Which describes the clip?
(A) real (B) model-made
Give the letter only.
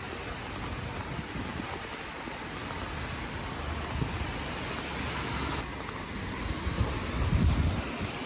A